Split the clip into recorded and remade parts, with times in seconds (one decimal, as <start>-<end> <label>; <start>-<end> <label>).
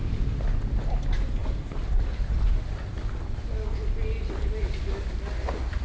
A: 0.0-5.8 recorded